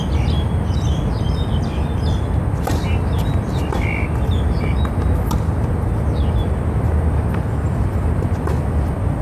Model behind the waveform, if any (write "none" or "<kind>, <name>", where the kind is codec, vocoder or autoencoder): none